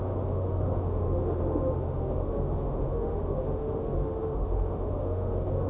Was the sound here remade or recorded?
remade